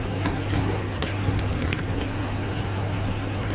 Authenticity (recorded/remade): remade